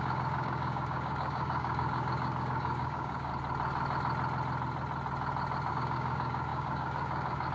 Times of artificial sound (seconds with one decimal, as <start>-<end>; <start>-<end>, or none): 0.0-3.3; 5.7-7.5